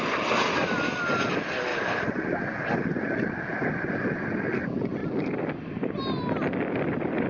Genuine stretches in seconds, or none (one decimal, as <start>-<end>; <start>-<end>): 0.0-1.7; 2.4-5.0; 6.2-7.3